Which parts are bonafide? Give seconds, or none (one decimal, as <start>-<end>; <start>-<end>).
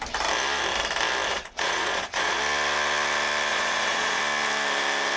0.0-1.3; 2.4-3.5; 4.2-5.2